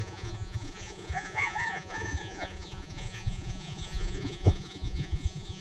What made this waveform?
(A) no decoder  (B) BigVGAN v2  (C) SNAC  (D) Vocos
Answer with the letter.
D